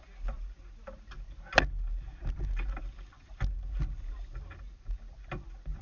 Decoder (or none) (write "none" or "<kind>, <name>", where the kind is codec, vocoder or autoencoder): none